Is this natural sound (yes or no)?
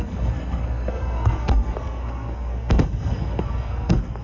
no